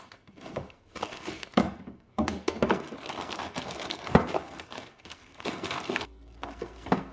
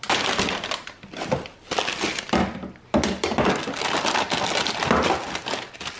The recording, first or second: second